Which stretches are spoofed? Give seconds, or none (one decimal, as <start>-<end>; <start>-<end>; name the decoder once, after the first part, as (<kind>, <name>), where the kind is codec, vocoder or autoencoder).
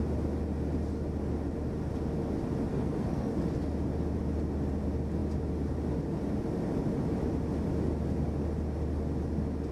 2.7-3.3 (codec, SNAC)